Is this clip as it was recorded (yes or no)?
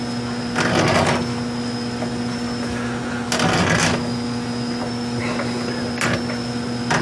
yes